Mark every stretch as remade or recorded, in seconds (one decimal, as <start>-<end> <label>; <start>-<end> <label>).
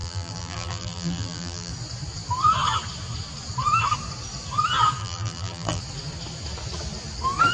0.0-1.7 remade; 1.7-5.0 recorded; 5.0-5.8 remade; 5.8-7.5 recorded